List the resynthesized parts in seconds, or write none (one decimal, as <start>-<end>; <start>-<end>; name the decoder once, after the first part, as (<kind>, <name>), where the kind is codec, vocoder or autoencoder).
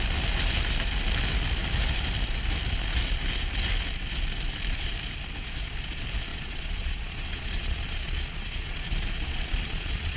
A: 6.3-10.2 (vocoder, Vocos)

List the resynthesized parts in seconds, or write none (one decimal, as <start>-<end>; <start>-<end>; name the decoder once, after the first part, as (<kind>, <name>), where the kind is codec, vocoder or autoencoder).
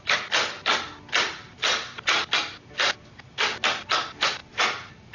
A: none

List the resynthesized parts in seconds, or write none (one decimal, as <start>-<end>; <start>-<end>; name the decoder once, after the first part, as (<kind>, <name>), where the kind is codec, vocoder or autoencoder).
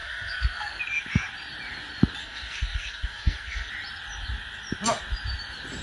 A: 0.0-0.8 (codec, SNAC); 2.2-3.7